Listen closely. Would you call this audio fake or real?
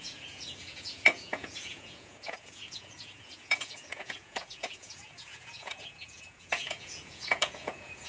fake